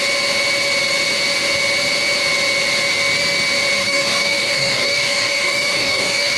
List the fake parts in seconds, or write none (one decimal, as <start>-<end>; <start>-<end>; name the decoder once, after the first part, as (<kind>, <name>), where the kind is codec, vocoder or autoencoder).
3.8-6.4 (codec, DAC)